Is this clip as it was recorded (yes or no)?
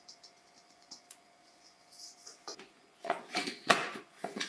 no